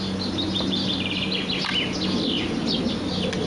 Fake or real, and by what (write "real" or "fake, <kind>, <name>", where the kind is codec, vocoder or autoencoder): real